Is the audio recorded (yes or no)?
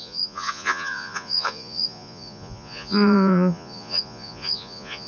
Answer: no